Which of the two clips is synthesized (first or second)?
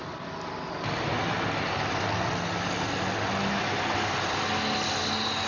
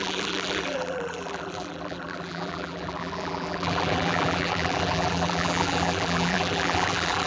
second